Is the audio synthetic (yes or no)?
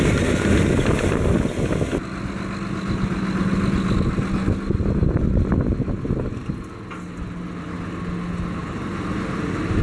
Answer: no